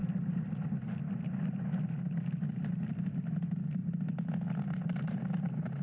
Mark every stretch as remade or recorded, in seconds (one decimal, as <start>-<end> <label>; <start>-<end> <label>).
0.0-5.8 recorded